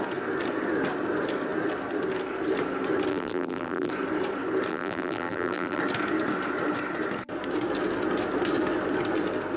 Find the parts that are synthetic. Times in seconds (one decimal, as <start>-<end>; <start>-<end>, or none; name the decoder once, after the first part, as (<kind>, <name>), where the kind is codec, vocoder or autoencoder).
3.1-3.9 (vocoder, BigVGAN v2); 4.7-5.8